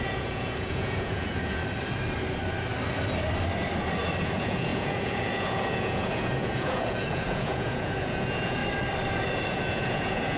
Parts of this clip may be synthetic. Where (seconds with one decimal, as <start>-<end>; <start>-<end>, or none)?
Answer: 0.0-1.6; 4.2-8.6; 9.5-10.4